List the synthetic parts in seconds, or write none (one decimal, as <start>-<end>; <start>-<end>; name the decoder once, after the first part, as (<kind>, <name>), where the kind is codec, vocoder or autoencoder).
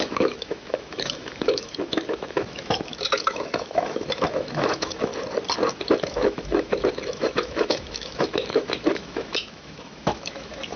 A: 0.0-5.1 (autoencoder, DAC-VAE); 6.0-10.8